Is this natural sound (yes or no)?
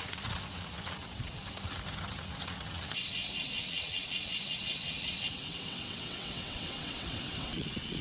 no